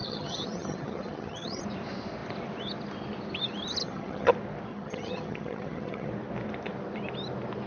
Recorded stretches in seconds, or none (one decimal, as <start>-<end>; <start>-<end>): 1.6-3.8; 4.3-4.7; 6.1-7.7